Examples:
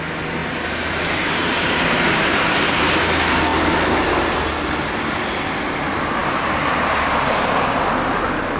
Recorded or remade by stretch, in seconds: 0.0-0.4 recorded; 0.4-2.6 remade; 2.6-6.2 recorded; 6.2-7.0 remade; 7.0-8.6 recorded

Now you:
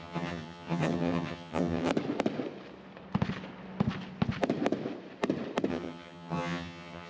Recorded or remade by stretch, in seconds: 0.0-1.9 remade; 1.9-5.7 recorded; 5.7-7.1 remade

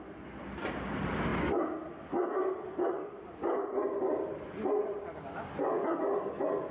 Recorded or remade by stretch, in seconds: 0.0-6.7 recorded

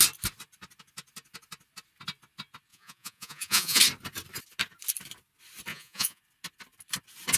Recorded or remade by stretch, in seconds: 0.0-2.7 recorded; 2.7-3.8 remade; 3.8-5.7 recorded; 5.7-6.2 remade; 6.2-7.4 recorded

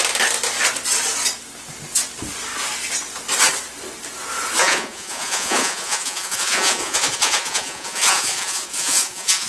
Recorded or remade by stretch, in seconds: 0.0-4.6 recorded; 4.6-9.5 remade